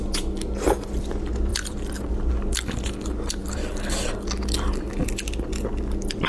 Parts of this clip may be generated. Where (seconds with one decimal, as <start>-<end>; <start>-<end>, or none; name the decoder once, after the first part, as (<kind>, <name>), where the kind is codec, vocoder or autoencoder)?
1.5-2.3 (vocoder, BigVGAN v2); 3.4-4.0